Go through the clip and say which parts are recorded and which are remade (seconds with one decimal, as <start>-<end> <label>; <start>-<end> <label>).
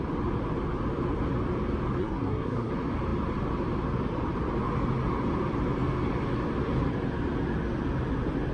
0.0-2.0 recorded; 2.0-2.7 remade; 2.7-8.5 recorded